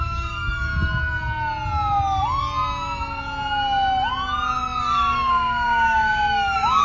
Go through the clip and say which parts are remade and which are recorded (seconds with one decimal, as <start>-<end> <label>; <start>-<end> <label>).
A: 0.0-0.7 remade; 0.7-4.8 recorded; 4.8-6.8 remade